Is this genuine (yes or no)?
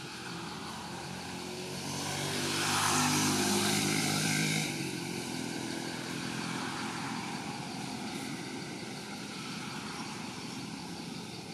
no